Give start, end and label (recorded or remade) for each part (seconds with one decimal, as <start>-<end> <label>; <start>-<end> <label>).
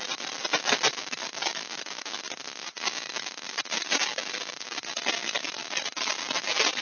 0.0-6.8 recorded